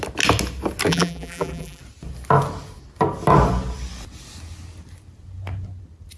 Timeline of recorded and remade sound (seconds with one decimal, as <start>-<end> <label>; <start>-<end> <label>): 0.0-0.9 recorded; 0.9-1.8 remade; 1.8-6.2 recorded